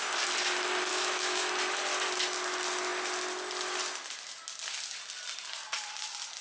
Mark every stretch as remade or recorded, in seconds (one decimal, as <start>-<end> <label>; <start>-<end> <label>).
0.0-0.9 recorded; 0.9-1.5 remade; 1.5-6.4 recorded